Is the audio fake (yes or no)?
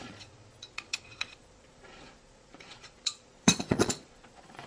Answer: yes